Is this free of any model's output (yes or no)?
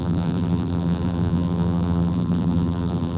no